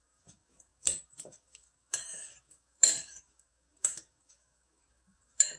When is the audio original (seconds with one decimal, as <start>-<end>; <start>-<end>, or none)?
none